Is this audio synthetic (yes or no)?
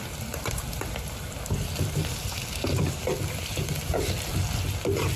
no